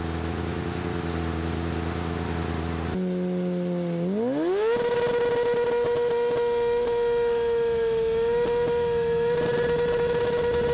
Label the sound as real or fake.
real